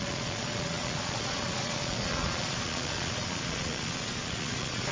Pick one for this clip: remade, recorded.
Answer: remade